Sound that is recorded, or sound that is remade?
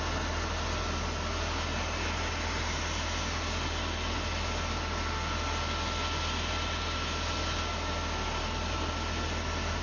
recorded